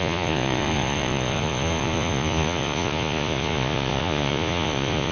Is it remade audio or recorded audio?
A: remade